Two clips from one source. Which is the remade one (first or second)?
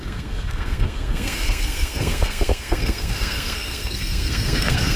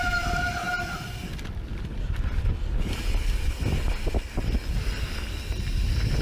first